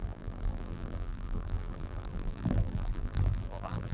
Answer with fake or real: fake